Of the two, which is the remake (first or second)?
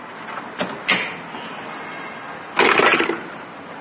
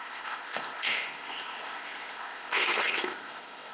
second